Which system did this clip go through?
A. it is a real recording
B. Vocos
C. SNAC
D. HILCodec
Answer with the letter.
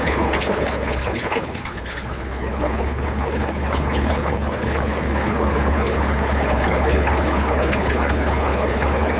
D